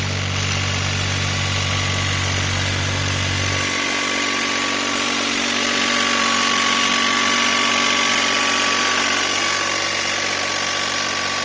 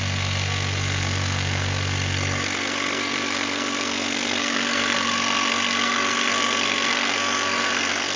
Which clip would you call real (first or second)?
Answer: first